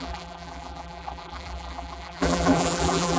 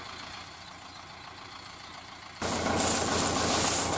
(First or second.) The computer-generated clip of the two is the first